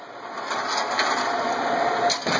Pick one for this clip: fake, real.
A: real